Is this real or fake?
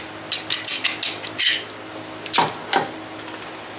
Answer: real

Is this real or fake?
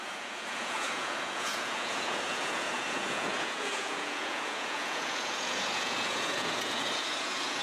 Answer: fake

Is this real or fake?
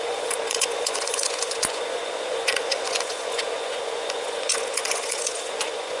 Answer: fake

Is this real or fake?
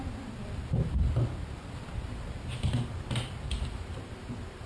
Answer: real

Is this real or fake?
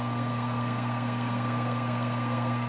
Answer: fake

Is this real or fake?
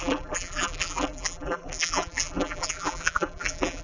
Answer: fake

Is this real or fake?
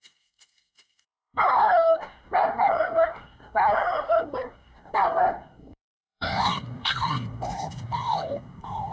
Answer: fake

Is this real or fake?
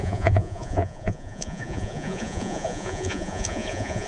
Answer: fake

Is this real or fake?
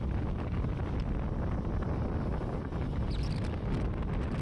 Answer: real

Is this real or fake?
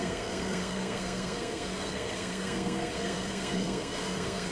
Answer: fake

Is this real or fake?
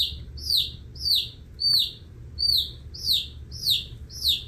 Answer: real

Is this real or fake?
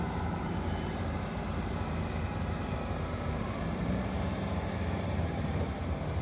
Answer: fake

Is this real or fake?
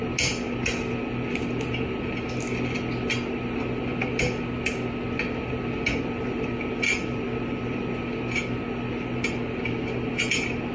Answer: real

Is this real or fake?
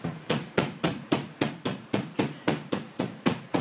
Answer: fake